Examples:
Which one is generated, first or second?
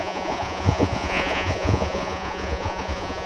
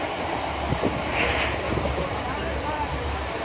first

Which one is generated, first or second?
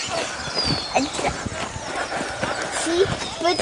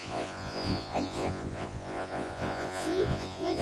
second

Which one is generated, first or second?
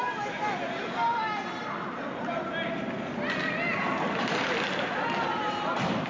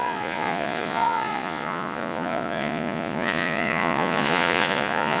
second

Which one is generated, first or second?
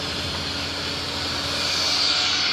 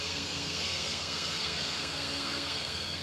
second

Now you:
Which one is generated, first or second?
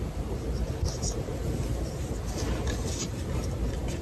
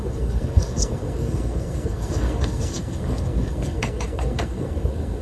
second